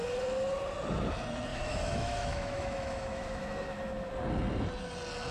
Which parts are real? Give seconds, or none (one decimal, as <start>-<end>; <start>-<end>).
0.0-1.5; 4.1-5.3